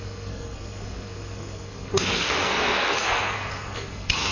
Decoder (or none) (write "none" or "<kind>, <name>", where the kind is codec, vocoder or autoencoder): codec, SNAC